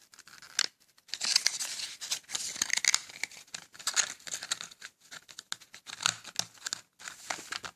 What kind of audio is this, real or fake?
real